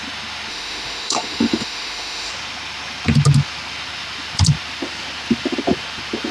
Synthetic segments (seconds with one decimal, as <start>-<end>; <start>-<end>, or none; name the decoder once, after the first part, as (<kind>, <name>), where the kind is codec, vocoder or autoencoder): 0.5-2.3 (autoencoder, DAC-VAE)

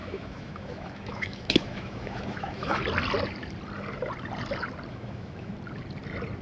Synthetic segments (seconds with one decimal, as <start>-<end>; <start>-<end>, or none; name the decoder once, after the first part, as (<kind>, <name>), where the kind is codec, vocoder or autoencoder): 0.0-2.8 (autoencoder, DAC-VAE); 4.9-5.5

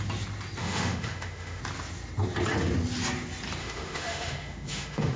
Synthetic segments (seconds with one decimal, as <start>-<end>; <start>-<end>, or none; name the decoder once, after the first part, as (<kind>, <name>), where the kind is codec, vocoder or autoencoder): 0.6-1.6 (autoencoder, DAC-VAE); 3.6-5.2

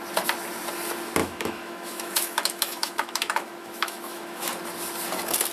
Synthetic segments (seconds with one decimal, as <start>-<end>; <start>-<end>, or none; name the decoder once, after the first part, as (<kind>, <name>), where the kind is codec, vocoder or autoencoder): 1.2-4.5 (autoencoder, DAC-VAE)